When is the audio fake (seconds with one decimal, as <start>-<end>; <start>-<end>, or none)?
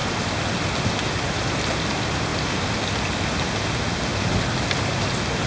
none